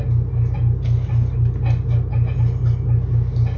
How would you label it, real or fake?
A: real